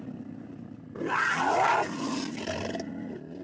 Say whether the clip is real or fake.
real